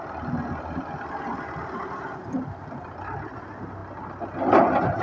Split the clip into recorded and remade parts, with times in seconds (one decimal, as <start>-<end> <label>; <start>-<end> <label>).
0.0-5.0 recorded